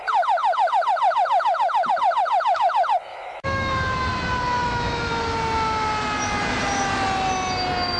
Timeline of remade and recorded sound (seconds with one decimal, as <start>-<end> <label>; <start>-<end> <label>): 0.0-3.1 recorded; 3.1-3.7 remade; 3.7-4.6 recorded; 4.6-5.1 remade; 5.1-8.0 recorded